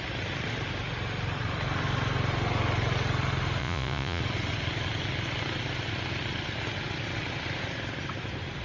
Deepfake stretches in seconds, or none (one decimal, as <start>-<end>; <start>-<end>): 3.6-4.2